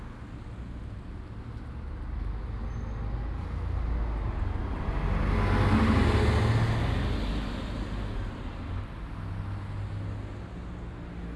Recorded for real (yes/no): yes